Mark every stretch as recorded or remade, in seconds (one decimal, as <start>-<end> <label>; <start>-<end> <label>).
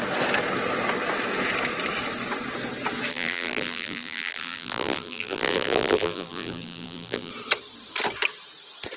0.0-3.1 recorded; 3.1-7.3 remade; 7.3-9.0 recorded